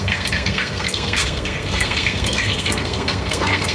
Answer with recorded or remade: remade